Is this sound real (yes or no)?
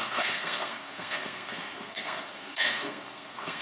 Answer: no